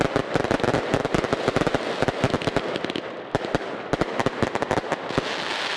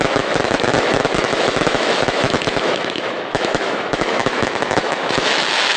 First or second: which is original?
first